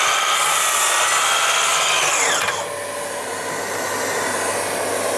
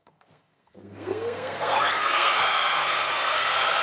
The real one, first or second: first